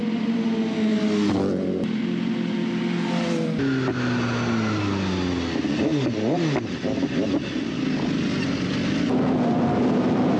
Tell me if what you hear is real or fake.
real